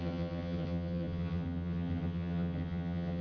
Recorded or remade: remade